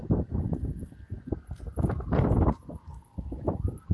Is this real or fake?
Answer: real